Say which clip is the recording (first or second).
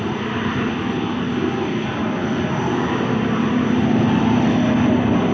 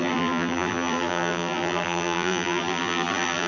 first